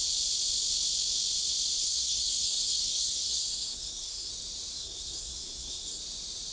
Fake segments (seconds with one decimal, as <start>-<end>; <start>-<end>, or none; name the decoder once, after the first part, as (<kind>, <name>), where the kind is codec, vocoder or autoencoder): 1.8-4.3 (codec, SNAC); 4.7-6.0